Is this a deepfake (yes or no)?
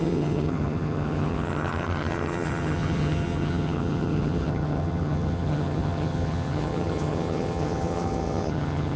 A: yes